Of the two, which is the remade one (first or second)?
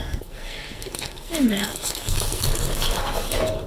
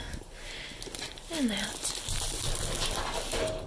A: first